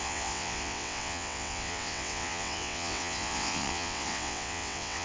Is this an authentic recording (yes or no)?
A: no